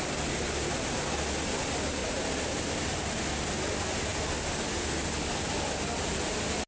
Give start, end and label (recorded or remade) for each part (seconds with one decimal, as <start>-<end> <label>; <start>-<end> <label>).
0.0-2.0 recorded; 2.0-2.7 remade; 2.7-6.7 recorded